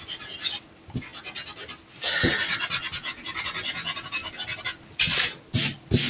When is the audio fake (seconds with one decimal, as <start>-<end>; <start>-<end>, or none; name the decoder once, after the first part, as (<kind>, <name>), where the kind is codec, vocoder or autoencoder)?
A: none